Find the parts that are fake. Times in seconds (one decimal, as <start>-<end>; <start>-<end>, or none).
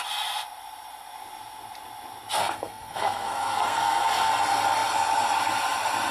2.4-4.3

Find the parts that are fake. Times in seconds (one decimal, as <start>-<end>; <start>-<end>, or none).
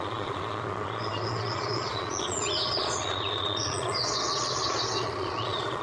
0.0-5.8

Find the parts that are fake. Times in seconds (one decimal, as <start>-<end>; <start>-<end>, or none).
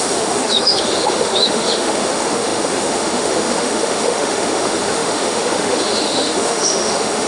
0.0-7.3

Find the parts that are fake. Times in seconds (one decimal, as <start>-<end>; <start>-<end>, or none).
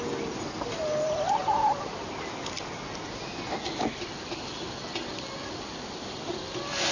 none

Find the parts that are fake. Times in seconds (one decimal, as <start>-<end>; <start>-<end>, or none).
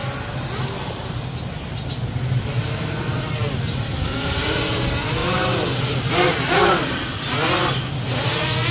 2.0-2.9; 5.2-6.1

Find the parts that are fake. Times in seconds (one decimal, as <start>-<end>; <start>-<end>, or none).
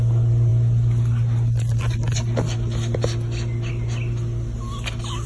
none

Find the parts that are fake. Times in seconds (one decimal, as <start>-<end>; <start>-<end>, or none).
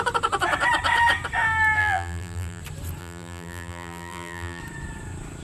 1.8-2.6; 3.0-4.6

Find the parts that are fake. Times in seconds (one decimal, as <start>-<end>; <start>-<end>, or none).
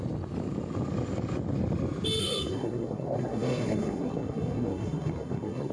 2.2-5.7